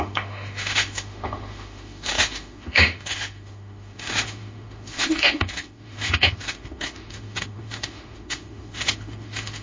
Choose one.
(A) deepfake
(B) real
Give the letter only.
A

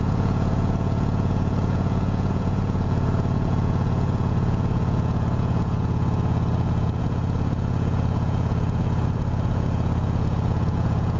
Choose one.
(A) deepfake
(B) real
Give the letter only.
A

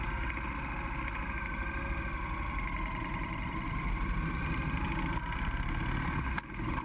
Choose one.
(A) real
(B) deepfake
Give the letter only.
A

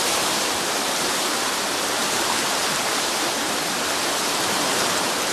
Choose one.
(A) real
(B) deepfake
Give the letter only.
B